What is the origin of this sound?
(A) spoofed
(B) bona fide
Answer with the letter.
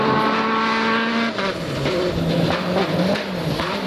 B